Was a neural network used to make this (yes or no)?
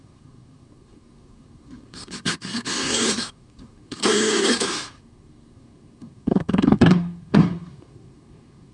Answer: yes